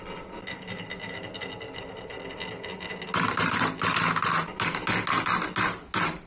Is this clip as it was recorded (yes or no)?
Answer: yes